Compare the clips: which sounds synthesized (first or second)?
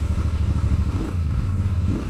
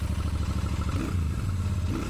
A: first